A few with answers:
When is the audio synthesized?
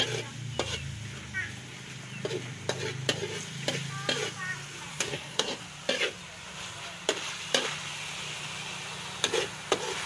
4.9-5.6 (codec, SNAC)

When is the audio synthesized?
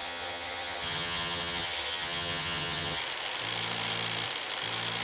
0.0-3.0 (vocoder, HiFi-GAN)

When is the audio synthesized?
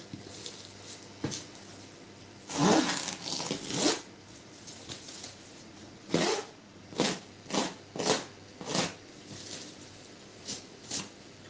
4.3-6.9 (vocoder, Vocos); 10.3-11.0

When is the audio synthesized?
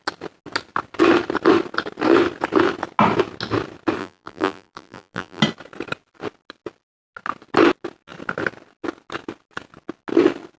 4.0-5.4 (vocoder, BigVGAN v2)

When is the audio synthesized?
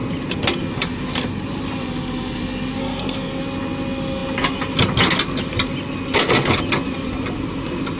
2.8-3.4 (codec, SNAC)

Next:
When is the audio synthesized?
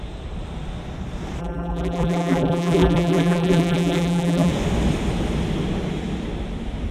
1.4-4.5 (vocoder, BigVGAN v2)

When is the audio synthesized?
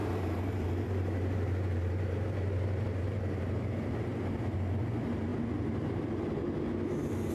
0.0-4.4 (vocoder, BigVGAN v2)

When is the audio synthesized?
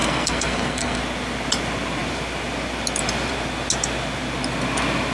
0.0-1.0 (codec, SNAC)